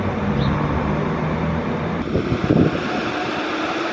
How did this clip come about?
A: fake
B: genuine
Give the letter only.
B